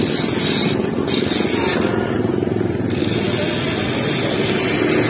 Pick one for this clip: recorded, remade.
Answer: recorded